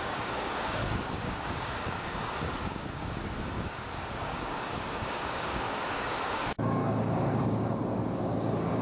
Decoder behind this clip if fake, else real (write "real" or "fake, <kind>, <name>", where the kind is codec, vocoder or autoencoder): fake, codec, DAC